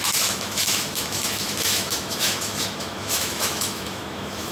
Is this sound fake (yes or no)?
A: yes